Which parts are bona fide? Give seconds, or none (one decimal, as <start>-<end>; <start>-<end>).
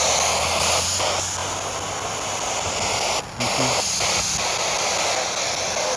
0.0-6.0